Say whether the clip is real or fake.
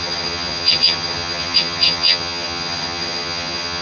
fake